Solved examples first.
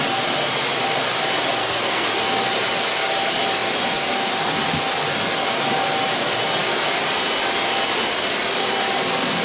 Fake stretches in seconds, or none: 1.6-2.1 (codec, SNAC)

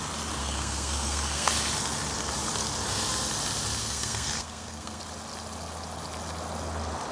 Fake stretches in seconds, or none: 0.4-1.5 (codec, SNAC); 3.8-5.0

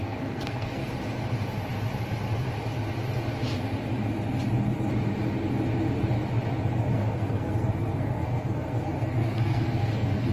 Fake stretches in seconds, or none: 0.0-0.9 (codec, SNAC); 6.9-10.3